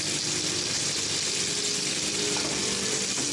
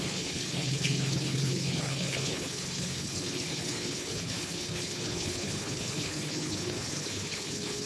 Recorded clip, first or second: first